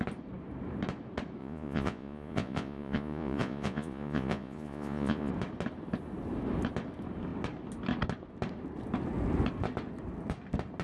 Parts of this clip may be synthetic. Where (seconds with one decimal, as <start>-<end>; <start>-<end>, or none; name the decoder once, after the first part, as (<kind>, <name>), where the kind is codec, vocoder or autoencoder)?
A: 1.4-5.3 (vocoder, Vocos)